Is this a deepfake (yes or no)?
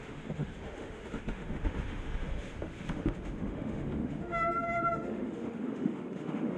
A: yes